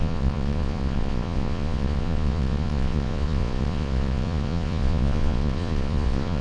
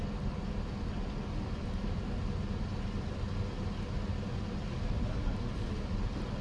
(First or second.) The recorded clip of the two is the second